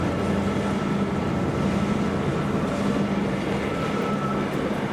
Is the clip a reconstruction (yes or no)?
no